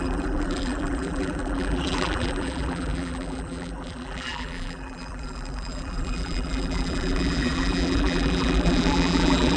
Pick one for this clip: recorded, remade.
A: remade